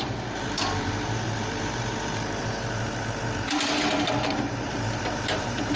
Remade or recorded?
remade